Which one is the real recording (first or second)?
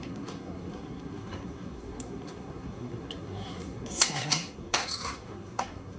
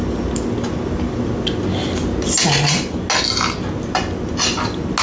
second